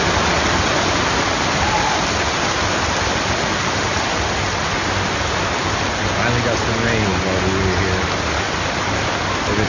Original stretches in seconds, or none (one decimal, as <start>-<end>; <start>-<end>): 0.0-9.7